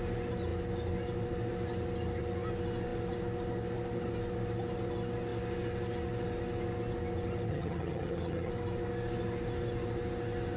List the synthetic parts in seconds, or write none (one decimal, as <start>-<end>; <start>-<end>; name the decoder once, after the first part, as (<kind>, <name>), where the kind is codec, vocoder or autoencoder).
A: 7.5-8.5 (vocoder, HiFi-GAN)